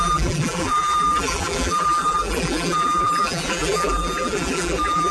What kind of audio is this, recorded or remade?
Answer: remade